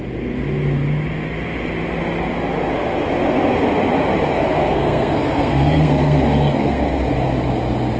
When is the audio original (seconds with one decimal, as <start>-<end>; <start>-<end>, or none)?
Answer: 0.0-4.6; 7.0-8.0